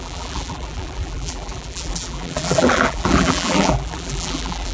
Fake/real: fake